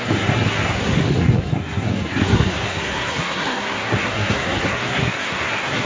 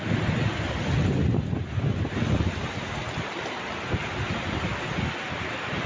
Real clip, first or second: second